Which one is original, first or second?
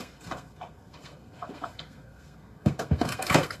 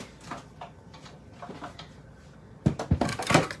second